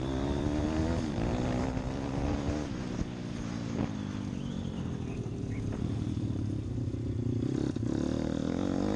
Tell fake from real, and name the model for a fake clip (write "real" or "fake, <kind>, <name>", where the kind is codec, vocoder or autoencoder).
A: real